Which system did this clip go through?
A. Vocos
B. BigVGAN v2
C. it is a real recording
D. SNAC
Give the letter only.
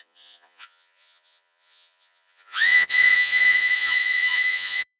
A